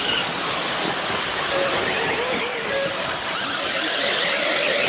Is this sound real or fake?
real